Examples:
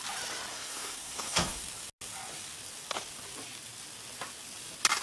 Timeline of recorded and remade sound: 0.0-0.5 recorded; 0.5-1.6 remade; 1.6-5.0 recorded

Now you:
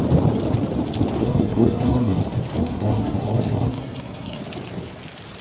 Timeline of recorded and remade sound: 0.0-1.2 recorded; 1.2-2.2 remade; 2.2-2.6 recorded; 2.6-4.4 remade; 4.4-5.4 recorded